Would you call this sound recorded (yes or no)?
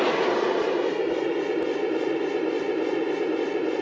yes